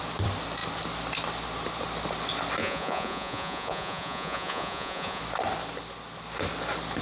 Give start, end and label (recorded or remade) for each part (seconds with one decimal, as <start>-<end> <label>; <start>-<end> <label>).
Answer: 0.0-2.6 recorded; 2.6-5.2 remade; 5.2-7.0 recorded

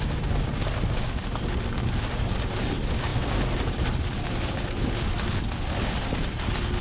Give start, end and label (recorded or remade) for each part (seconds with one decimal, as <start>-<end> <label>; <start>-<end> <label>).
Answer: 0.0-6.8 recorded

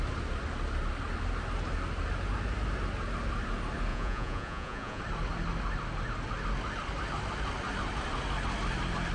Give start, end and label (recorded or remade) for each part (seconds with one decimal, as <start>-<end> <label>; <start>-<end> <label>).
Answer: 0.0-3.9 recorded; 3.9-5.0 remade; 5.0-9.1 recorded

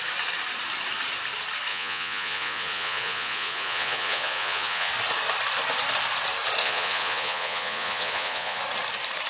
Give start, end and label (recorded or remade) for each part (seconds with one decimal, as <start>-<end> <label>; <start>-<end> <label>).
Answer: 0.0-1.7 recorded; 1.7-4.9 remade; 4.9-6.6 recorded; 6.6-8.6 remade; 8.6-9.3 recorded

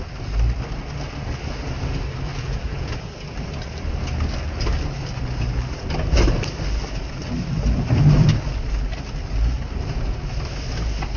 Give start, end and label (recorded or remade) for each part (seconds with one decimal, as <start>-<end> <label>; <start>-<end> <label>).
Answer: 0.0-2.3 recorded; 2.3-3.1 remade; 3.1-11.2 recorded

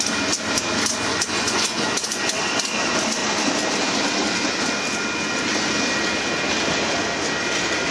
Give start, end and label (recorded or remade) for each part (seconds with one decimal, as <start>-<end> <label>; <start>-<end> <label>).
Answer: 0.0-1.1 recorded; 1.1-2.2 remade; 2.2-7.9 recorded

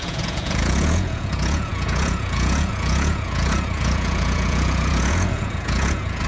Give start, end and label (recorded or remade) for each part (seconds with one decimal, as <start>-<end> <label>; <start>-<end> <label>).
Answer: 0.0-6.3 remade

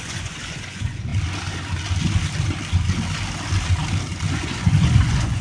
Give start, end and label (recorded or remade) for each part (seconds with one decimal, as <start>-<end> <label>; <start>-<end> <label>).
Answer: 0.0-1.1 remade; 1.1-4.3 recorded; 4.3-5.4 remade